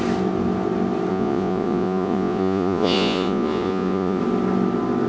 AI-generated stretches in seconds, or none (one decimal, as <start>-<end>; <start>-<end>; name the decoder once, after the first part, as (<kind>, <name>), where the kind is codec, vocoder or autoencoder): 1.1-4.2 (vocoder, Vocos)